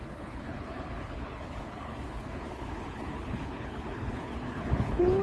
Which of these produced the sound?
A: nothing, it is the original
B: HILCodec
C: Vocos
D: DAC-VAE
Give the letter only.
B